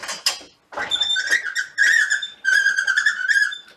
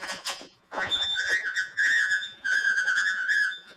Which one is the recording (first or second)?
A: first